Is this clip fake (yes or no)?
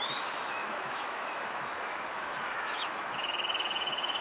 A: yes